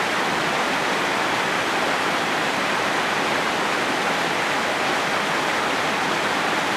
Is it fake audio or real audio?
real